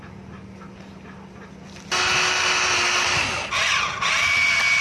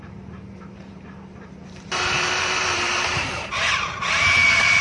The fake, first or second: second